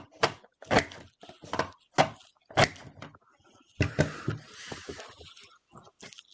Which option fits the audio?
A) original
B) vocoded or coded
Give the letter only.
A